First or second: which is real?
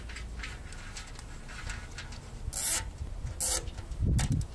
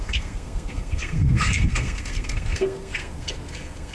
first